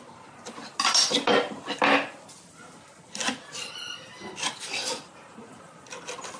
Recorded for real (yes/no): yes